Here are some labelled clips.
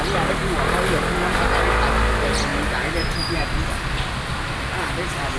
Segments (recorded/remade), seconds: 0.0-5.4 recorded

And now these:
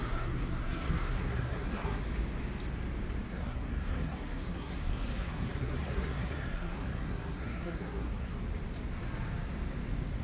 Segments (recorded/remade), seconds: 0.0-2.0 remade; 2.0-3.3 recorded; 3.3-8.4 remade; 8.4-10.2 recorded

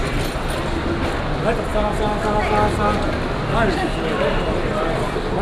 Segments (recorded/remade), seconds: 0.0-5.4 recorded

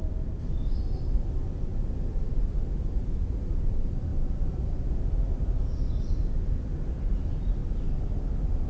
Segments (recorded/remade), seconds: 0.0-8.7 recorded